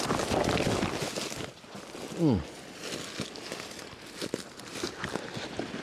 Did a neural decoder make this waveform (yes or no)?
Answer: no